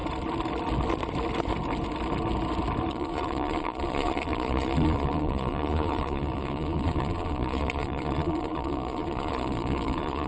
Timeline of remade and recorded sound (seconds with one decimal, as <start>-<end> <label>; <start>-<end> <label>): 0.0-2.9 recorded; 2.9-10.3 remade